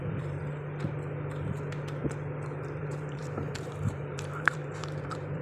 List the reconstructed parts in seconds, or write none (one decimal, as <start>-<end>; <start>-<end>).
0.0-0.4; 2.8-5.4